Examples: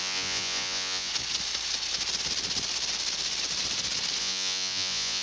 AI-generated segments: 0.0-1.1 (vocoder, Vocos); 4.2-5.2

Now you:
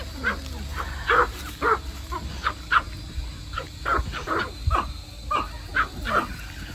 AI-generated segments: none

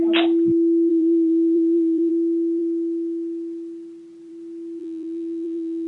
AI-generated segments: 0.9-2.1 (vocoder, BigVGAN v2); 4.8-5.9

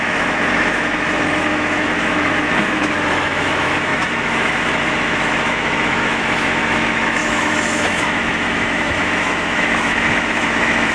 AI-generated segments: 0.0-10.9 (autoencoder, DAC-VAE)

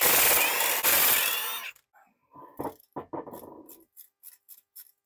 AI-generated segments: none

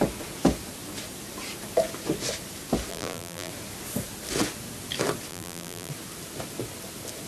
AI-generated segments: 2.9-3.5 (vocoder, BigVGAN v2); 5.3-5.9

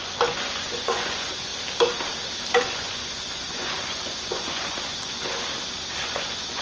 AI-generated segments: 0.0-1.5 (vocoder, Vocos); 2.5-5.3; 6.0-6.6